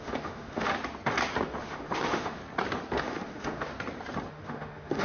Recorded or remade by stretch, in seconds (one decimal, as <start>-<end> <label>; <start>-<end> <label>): 0.0-0.7 remade; 0.7-1.6 recorded; 1.6-2.4 remade; 2.4-3.0 recorded; 3.0-3.7 remade; 3.7-4.3 recorded; 4.3-5.0 remade